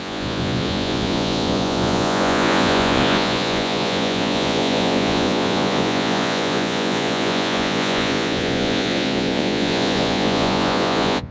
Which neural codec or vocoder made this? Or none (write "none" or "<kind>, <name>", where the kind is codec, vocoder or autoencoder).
vocoder, Vocos